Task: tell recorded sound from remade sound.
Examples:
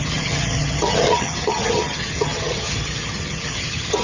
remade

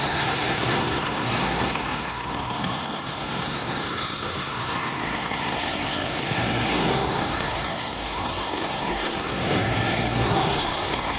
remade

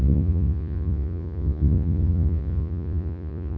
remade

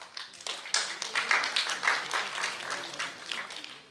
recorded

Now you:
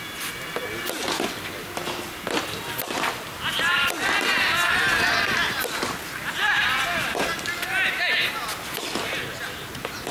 recorded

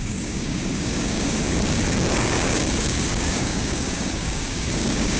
remade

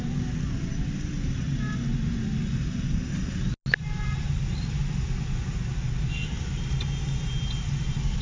recorded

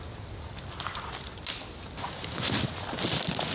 recorded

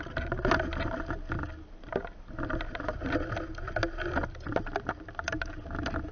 recorded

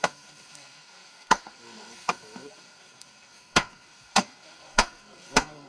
remade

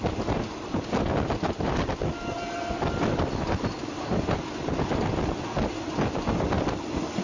recorded